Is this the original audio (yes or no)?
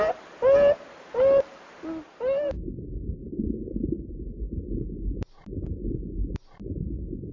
yes